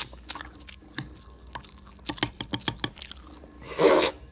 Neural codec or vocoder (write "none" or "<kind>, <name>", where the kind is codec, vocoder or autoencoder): none